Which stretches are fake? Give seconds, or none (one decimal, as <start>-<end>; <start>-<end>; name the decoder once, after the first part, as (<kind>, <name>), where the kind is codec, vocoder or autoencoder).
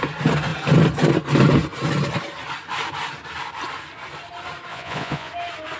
4.7-5.3 (vocoder, Vocos)